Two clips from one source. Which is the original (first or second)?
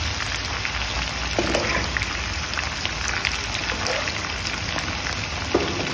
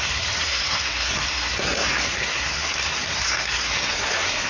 first